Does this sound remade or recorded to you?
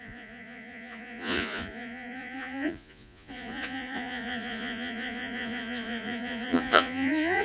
remade